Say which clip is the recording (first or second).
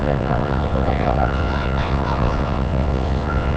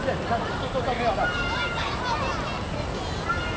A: second